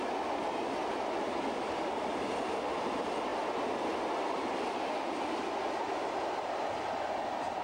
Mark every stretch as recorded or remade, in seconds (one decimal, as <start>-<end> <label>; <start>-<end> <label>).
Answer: 0.0-7.6 recorded